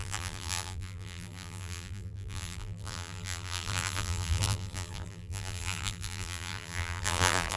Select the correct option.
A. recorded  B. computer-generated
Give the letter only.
B